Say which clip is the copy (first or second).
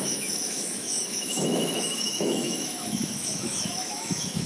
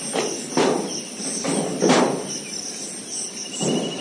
first